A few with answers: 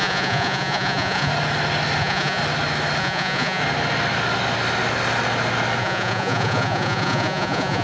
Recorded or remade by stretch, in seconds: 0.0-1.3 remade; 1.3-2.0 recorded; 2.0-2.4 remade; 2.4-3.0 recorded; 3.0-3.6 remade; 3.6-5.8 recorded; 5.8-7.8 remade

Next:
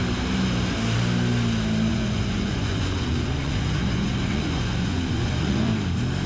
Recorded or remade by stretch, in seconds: 0.0-1.9 recorded; 1.9-5.7 remade; 5.7-6.3 recorded

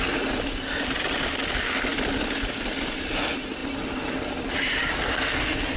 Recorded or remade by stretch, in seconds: 0.0-5.8 recorded

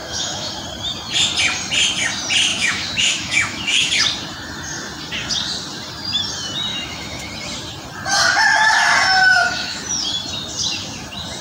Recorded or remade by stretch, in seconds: 0.0-0.5 remade; 0.5-2.5 recorded; 2.5-3.9 remade; 3.9-6.7 recorded; 6.7-7.3 remade; 7.3-9.2 recorded; 9.2-9.8 remade; 9.8-11.4 recorded

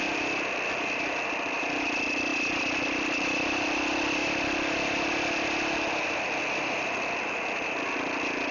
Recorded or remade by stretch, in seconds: 0.0-8.5 recorded

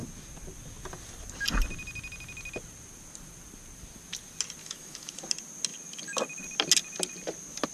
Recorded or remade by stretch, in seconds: 0.0-4.6 recorded; 4.6-5.2 remade; 5.2-7.7 recorded

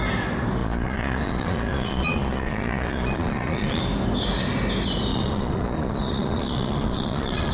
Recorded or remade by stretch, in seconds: 0.0-0.6 recorded; 0.6-3.8 remade; 3.8-5.1 recorded; 5.1-7.5 remade

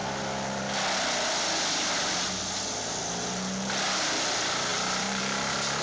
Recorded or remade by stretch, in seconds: 0.0-4.7 recorded; 4.7-5.2 remade; 5.2-5.8 recorded